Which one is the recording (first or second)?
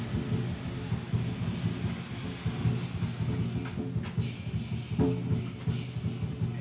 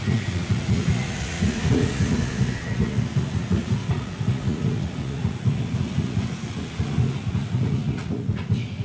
first